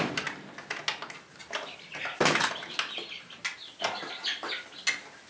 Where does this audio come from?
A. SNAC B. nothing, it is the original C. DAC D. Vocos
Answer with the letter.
B